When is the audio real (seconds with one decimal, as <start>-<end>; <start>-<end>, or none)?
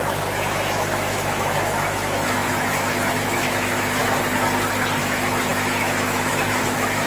4.0-5.0